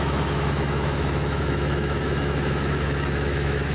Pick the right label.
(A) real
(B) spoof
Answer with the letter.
B